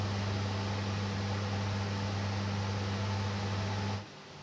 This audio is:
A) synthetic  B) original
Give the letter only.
B